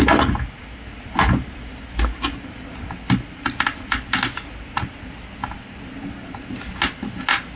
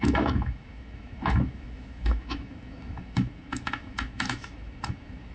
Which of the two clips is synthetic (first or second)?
second